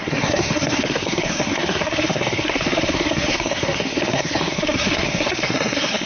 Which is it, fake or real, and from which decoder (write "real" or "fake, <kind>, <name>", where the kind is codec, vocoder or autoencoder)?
fake, codec, SNAC